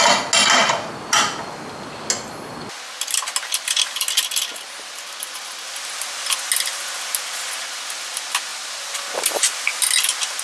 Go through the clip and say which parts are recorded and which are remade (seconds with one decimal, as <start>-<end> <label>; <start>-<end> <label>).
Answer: 0.0-10.4 recorded